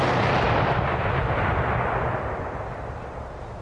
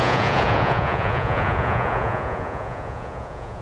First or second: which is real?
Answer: first